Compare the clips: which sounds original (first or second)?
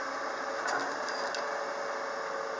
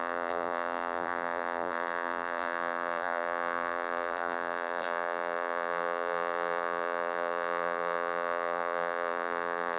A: first